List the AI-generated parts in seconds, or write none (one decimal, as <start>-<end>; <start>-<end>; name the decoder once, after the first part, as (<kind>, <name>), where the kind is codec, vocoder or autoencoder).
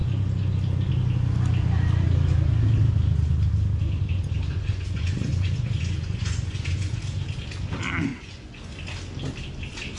4.1-7.0 (vocoder, Vocos); 8.1-8.6